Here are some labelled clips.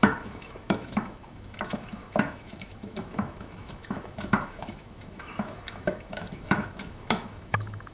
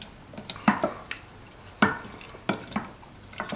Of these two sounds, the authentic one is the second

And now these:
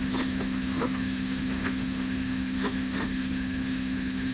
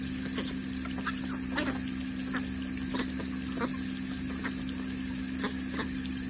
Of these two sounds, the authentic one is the second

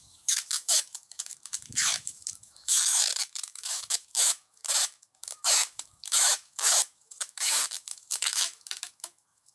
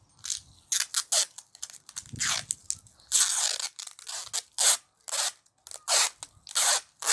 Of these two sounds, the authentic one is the second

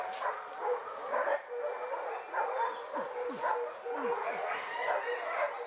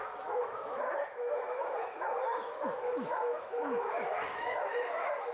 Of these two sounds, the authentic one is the first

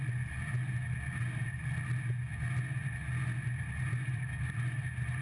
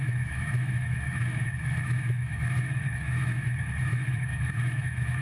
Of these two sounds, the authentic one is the first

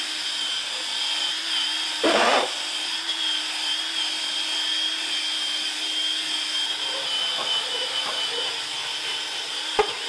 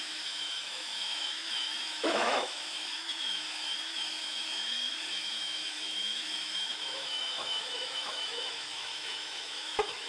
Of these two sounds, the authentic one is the first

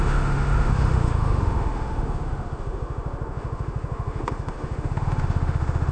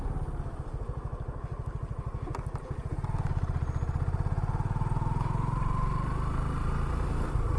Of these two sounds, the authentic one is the second